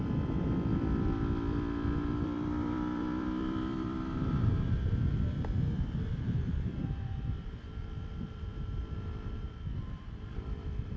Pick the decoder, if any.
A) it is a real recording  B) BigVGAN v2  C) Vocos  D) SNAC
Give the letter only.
B